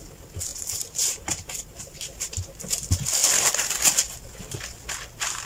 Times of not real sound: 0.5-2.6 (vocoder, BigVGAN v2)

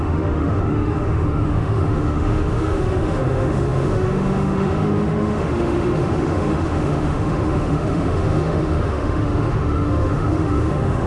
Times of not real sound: 0.0-11.1 (autoencoder, DAC-VAE)

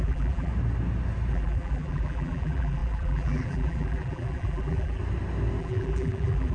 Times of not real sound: 0.0-0.5 (vocoder, BigVGAN v2); 1.3-5.0; 5.6-6.5

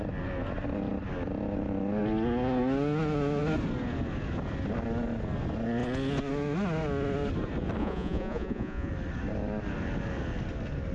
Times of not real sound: 7.8-8.9 (vocoder, Vocos)

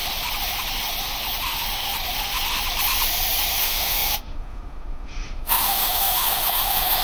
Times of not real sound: 3.6-7.0 (autoencoder, DAC-VAE)

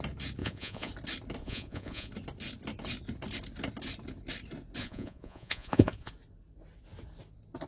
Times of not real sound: 0.4-0.9 (vocoder, Vocos); 1.4-2.1; 4.8-6.1